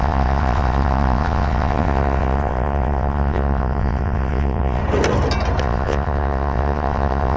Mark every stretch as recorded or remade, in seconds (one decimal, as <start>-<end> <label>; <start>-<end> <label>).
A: 0.0-4.8 remade; 4.8-5.6 recorded; 5.6-7.4 remade